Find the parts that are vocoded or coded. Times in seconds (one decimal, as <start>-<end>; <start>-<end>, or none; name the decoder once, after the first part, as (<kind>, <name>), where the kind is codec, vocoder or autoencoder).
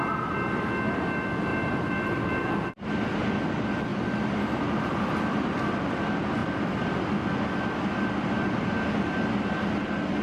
1.5-2.7 (vocoder, BigVGAN v2); 3.9-4.6; 6.4-7.0